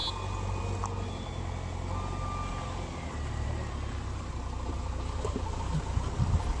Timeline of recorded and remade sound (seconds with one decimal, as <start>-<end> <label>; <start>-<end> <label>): 0.0-2.5 recorded; 2.5-6.1 remade; 6.1-6.6 recorded